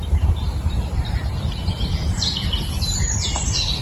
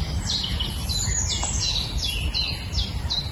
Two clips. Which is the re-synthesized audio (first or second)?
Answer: first